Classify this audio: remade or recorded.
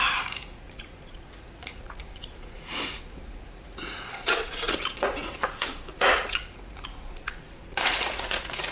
remade